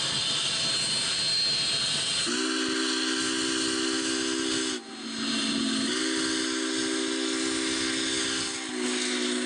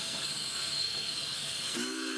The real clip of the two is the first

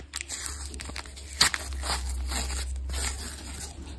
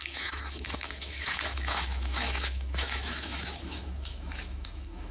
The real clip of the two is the first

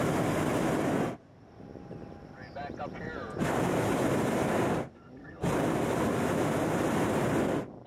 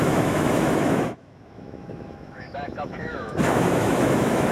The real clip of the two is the first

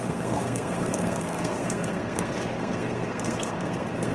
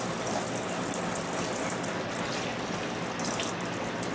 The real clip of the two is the second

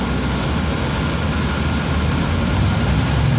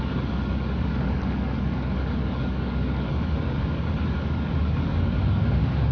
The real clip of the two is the first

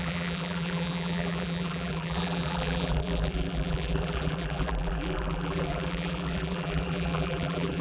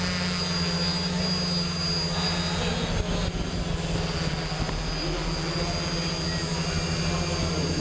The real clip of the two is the second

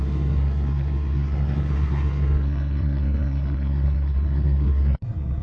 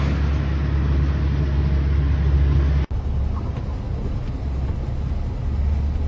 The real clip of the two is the second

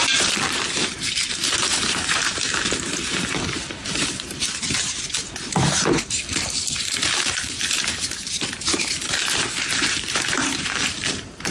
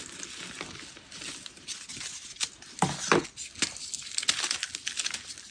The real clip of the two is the second